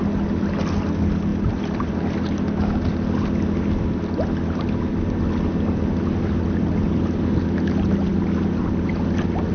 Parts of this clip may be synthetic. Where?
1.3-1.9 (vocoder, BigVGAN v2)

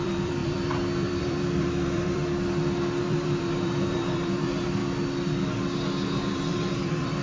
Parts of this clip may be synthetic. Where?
0.0-2.2 (vocoder, BigVGAN v2); 3.0-4.8; 6.2-7.2

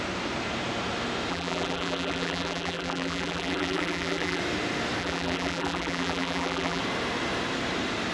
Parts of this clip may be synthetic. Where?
1.3-4.4 (vocoder, BigVGAN v2); 5.0-6.8

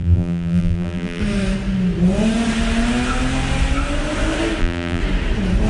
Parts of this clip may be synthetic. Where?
0.0-1.2 (vocoder, BigVGAN v2); 4.6-5.0

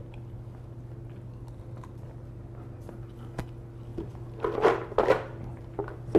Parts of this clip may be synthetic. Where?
none

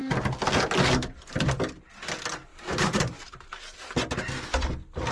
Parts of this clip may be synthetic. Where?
2.5-3.6 (vocoder, BigVGAN v2)